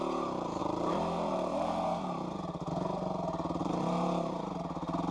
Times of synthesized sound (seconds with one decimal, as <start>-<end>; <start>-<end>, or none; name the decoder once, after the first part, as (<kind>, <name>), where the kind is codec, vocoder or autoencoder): 0.6-2.7 (vocoder, BigVGAN v2); 3.6-4.6